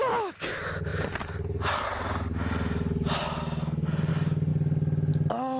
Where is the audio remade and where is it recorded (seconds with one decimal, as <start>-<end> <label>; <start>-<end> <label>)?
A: 0.0-5.6 recorded

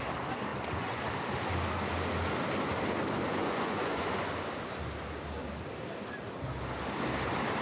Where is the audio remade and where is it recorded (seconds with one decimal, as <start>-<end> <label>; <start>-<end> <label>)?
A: 0.0-0.5 recorded; 0.5-1.0 remade; 1.0-3.3 recorded; 3.3-4.3 remade; 4.3-7.6 recorded

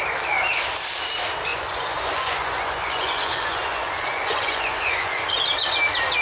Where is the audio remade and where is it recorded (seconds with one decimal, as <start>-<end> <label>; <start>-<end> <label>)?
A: 0.0-1.5 recorded; 1.5-5.2 remade; 5.2-6.2 recorded